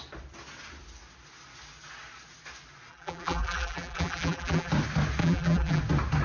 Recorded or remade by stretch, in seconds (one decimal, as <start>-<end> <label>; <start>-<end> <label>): 0.0-2.9 recorded; 2.9-4.7 remade; 4.7-5.2 recorded; 5.2-5.8 remade; 5.8-6.2 recorded